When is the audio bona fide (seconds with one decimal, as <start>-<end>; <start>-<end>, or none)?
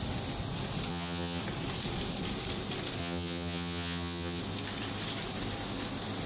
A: 0.0-0.9; 1.4-3.0; 4.4-6.3